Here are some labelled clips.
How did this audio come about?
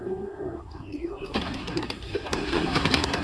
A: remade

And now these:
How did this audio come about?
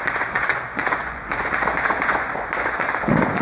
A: remade